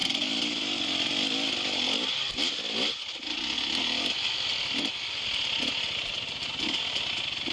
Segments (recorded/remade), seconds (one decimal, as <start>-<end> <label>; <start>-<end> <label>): 0.0-2.5 remade; 2.5-7.5 recorded